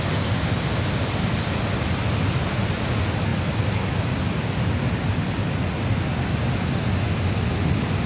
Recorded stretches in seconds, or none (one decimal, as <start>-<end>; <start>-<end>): 0.0-8.1